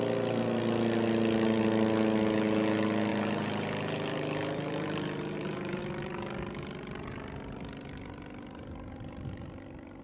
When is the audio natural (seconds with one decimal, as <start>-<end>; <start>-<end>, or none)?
0.0-3.1; 5.8-10.0